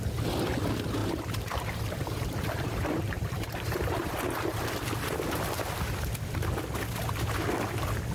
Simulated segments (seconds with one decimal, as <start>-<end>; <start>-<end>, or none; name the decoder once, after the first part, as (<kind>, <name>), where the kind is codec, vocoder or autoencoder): 1.0-4.1 (vocoder, BigVGAN v2)